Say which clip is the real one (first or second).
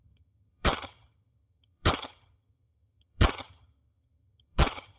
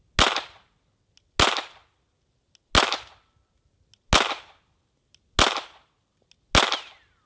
second